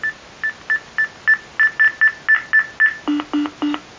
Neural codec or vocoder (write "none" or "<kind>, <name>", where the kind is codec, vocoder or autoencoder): none